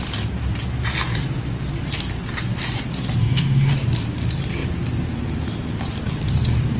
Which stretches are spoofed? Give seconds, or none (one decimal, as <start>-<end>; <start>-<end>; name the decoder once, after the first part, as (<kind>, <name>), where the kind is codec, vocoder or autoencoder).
3.2-3.7 (codec, DAC)